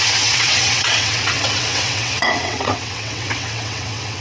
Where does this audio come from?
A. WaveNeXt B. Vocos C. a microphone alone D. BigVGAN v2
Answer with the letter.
A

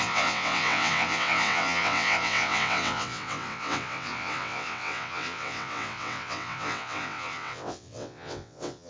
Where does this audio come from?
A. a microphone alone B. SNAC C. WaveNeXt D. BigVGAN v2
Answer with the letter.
C